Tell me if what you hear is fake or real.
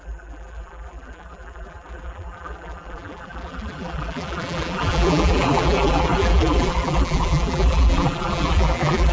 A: fake